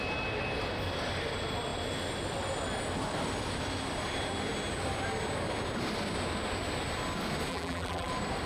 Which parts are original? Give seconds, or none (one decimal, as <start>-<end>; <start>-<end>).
0.0-7.5; 8.1-8.5